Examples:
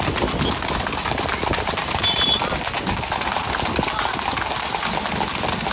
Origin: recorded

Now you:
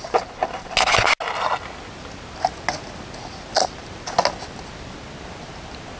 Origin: recorded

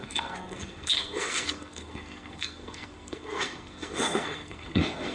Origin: remade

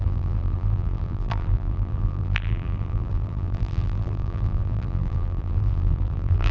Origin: remade